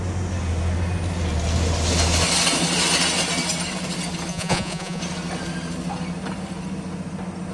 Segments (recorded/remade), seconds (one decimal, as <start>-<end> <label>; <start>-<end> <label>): 0.0-4.3 recorded; 4.3-5.0 remade; 5.0-7.5 recorded